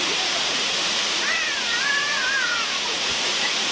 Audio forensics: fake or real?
fake